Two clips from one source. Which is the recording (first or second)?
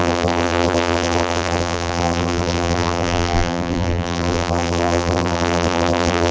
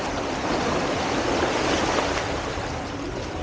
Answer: second